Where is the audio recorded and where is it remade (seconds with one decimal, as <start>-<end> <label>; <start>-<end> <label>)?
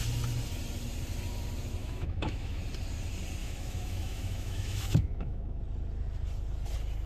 0.0-1.8 recorded; 1.8-2.6 remade; 2.6-3.4 recorded; 3.4-5.6 remade; 5.6-7.1 recorded